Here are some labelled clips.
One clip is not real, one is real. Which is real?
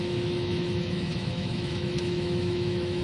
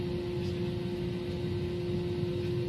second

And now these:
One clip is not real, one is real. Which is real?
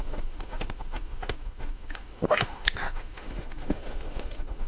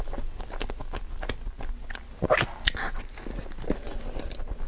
second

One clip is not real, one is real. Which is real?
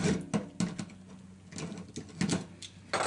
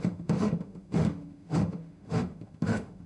first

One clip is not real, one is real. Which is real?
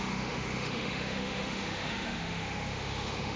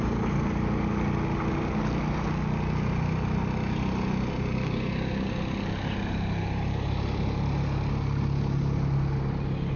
second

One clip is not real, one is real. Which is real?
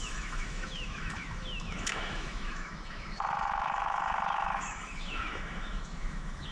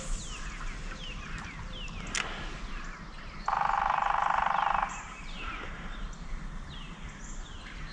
second